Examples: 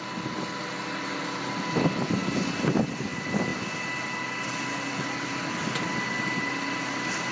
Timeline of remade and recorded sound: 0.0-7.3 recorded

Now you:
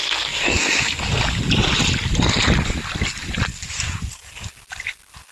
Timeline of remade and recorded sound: 0.0-1.0 remade; 1.0-5.3 recorded